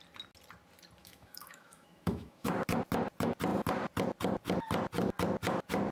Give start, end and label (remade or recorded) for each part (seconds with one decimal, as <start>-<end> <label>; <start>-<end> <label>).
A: 0.0-1.0 recorded; 1.0-2.5 remade; 2.5-5.9 recorded